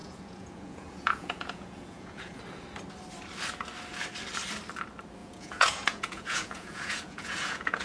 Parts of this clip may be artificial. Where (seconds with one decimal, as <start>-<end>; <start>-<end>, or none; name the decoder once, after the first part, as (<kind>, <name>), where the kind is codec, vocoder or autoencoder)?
0.0-2.4 (vocoder, Vocos); 5.2-7.8